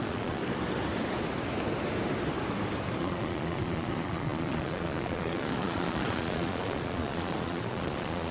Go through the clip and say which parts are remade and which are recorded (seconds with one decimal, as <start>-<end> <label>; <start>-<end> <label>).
0.0-0.4 remade; 0.4-3.0 recorded; 3.0-8.3 remade

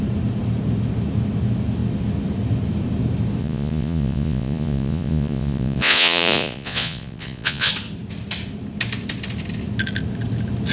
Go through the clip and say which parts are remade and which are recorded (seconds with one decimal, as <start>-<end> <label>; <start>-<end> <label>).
0.0-3.4 recorded; 3.4-7.7 remade; 7.7-10.7 recorded

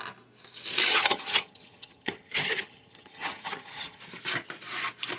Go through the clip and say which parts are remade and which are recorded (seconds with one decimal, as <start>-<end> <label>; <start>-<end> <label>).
0.0-0.9 recorded; 0.9-4.0 remade; 4.0-5.2 recorded

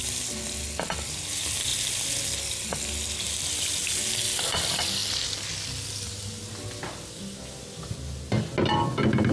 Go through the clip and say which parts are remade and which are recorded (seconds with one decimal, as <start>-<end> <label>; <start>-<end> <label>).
0.0-9.3 recorded